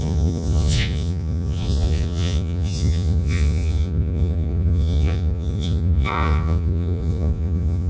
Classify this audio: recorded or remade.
remade